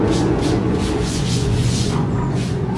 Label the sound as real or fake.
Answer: fake